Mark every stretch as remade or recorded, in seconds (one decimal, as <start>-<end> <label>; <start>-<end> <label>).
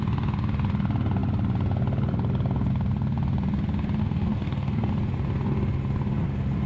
0.0-4.0 recorded; 4.0-4.9 remade; 4.9-6.7 recorded